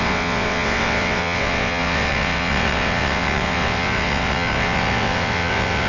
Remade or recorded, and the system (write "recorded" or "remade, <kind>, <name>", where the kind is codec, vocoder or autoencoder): remade, vocoder, WaveNeXt